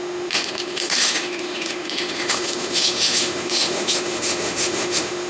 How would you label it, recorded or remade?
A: remade